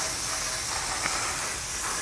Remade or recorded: recorded